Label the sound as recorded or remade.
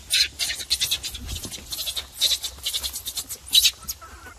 recorded